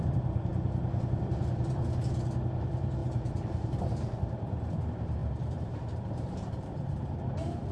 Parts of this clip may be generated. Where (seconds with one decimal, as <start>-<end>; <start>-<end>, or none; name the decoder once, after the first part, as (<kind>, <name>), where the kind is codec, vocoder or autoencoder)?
0.0-7.7 (vocoder, BigVGAN v2)